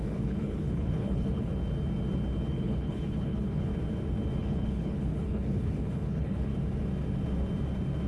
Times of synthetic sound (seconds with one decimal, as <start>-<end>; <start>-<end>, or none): 0.0-1.5; 2.5-3.7; 4.4-6.5